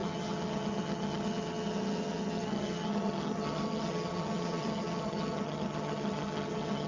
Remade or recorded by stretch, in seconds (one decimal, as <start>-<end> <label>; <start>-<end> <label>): 0.0-6.9 remade